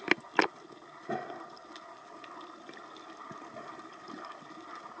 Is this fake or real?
real